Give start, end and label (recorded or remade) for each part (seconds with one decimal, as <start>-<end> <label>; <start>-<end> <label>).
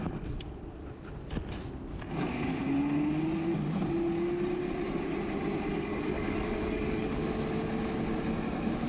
0.0-1.9 recorded; 1.9-2.4 remade; 2.4-5.7 recorded; 5.7-7.2 remade; 7.2-8.9 recorded